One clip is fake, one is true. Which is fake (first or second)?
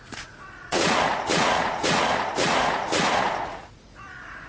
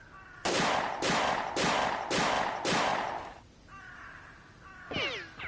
first